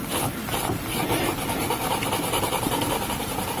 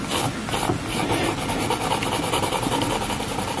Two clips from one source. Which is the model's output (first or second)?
first